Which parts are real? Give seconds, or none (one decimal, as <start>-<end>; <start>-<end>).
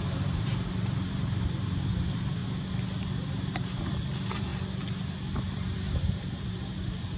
2.4-3.0; 4.5-5.4